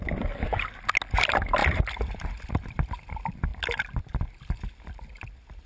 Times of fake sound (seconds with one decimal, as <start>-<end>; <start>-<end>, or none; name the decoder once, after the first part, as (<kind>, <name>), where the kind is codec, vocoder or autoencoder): none